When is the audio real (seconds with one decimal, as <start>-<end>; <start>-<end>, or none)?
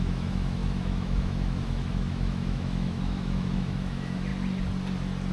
4.3-5.3